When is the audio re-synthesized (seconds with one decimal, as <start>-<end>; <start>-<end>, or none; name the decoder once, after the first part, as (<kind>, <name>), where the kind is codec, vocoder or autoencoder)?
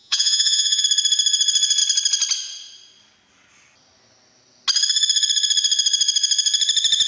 0.0-0.8 (vocoder, Vocos)